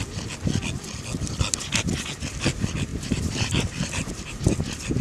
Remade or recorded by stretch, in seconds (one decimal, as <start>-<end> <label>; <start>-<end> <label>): 0.0-2.9 recorded; 2.9-4.4 remade; 4.4-5.0 recorded